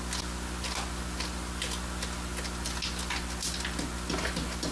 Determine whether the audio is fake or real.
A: real